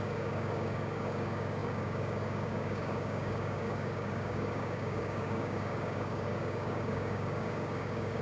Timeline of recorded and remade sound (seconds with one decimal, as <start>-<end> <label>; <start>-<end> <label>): 0.0-8.2 remade

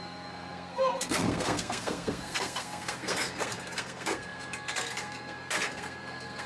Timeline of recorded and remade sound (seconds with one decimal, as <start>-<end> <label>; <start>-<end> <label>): 0.0-6.5 remade

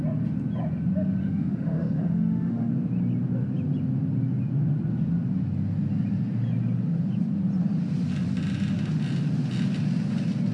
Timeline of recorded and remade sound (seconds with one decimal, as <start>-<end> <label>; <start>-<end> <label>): 0.0-1.2 recorded; 1.2-2.7 remade; 2.7-10.5 recorded

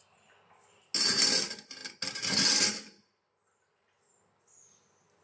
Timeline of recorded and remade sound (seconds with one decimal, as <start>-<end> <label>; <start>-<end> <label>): 0.0-5.2 recorded